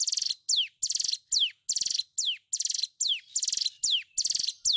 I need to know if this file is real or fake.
real